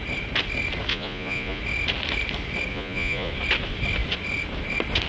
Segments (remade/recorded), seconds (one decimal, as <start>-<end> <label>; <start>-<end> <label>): 0.0-0.9 recorded; 0.9-1.6 remade; 1.6-2.7 recorded; 2.7-3.3 remade; 3.3-5.1 recorded